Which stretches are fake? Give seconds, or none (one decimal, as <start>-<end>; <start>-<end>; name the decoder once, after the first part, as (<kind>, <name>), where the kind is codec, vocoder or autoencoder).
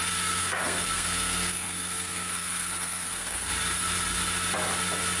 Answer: 0.4-3.5 (codec, SNAC)